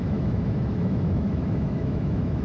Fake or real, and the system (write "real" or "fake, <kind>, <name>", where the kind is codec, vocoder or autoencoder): fake, autoencoder, DAC-VAE